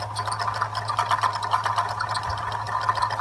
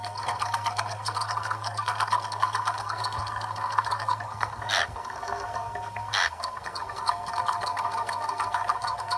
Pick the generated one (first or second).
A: second